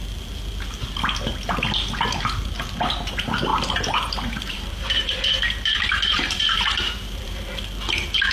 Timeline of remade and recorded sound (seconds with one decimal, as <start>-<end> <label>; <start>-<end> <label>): 0.0-3.5 recorded; 3.5-7.4 remade; 7.4-8.3 recorded